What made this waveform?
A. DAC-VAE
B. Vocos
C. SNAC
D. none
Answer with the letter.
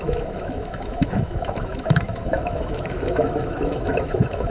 A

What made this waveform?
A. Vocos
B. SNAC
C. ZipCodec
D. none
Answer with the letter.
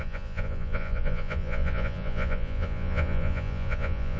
A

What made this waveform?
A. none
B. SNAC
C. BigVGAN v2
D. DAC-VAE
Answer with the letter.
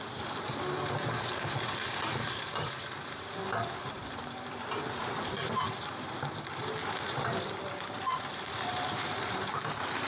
C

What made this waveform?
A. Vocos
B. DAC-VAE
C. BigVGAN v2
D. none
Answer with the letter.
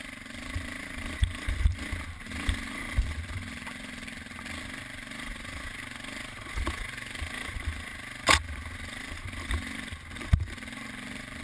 D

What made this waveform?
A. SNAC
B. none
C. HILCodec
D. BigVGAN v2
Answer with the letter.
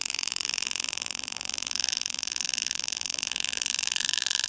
D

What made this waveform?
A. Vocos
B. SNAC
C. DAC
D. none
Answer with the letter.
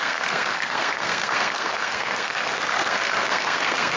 B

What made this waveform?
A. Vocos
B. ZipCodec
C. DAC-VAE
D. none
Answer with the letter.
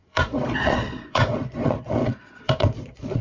A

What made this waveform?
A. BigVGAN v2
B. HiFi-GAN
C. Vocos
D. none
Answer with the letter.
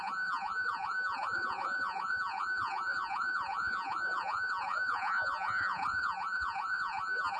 C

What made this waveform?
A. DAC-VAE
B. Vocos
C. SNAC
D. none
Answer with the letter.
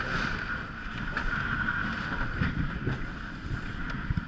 D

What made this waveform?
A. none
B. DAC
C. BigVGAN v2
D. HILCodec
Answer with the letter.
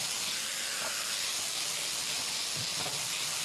A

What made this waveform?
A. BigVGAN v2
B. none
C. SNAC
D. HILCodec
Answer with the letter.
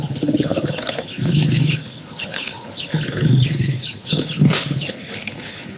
D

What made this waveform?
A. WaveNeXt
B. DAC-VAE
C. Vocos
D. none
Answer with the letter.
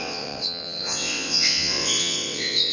A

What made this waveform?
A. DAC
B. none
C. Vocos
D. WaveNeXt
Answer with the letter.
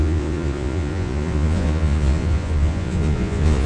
C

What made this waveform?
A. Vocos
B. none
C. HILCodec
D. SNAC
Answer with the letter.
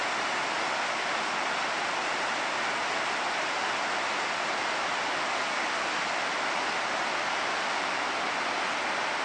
B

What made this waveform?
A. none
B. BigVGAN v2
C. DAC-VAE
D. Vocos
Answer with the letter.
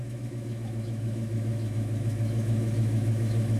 C